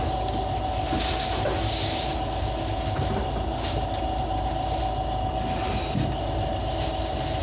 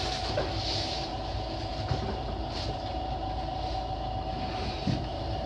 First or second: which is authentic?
first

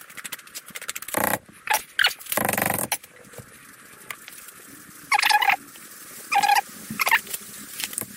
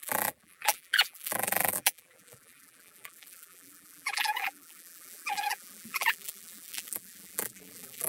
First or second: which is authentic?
first